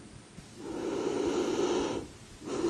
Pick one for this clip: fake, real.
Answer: real